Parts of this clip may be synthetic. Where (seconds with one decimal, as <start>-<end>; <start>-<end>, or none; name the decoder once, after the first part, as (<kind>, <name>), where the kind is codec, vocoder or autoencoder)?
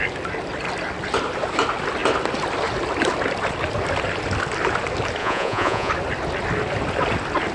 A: 5.2-5.9 (vocoder, Vocos)